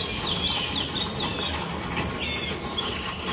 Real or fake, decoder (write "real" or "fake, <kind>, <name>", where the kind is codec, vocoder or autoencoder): real